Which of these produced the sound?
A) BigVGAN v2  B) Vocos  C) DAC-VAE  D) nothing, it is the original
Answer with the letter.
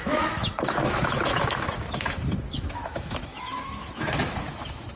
C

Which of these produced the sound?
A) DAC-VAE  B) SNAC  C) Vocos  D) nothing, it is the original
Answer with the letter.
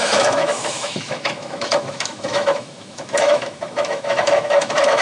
A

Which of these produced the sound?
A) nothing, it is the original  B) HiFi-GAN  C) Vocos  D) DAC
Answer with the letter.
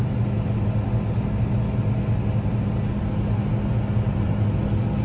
A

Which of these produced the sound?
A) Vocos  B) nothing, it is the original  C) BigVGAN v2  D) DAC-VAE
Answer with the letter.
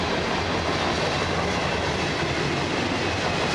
B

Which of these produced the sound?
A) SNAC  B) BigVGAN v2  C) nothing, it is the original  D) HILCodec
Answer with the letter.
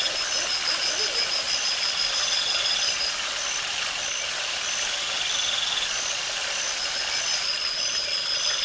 C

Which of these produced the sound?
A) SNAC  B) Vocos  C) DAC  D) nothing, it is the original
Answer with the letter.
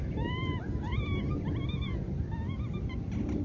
D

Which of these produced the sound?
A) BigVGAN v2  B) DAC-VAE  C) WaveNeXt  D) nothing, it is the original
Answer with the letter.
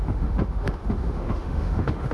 B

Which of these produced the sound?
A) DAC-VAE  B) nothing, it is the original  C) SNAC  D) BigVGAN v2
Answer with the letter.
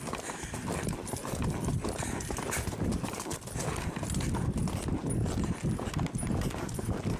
B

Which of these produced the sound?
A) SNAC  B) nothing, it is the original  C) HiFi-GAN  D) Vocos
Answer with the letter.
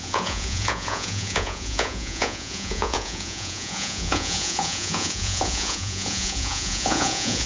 D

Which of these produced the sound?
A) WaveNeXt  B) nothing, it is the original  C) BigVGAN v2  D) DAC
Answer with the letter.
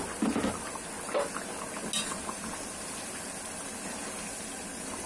B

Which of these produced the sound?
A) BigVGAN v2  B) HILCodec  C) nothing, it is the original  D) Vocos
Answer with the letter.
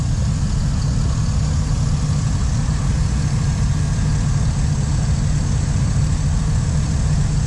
C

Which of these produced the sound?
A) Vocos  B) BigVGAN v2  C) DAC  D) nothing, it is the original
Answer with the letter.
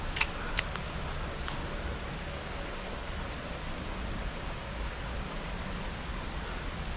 D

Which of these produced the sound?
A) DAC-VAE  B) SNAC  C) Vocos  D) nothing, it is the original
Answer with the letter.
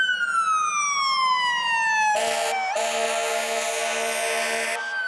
D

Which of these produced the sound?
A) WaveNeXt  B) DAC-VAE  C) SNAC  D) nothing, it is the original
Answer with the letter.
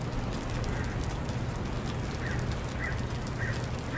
D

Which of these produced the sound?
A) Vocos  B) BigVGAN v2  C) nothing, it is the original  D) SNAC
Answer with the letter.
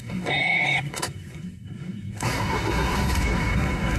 D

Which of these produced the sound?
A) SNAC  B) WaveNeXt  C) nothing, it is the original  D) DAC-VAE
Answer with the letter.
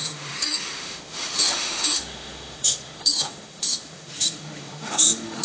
D